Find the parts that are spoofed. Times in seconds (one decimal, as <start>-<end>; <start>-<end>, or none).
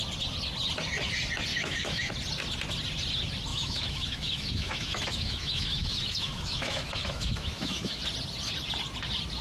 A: 1.5-2.1; 3.5-8.0